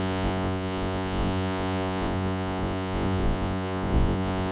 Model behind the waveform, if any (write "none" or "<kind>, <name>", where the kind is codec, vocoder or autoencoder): vocoder, Vocos